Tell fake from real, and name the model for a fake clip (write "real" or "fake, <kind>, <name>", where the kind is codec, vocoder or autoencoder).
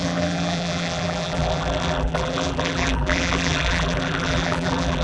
fake, vocoder, BigVGAN v2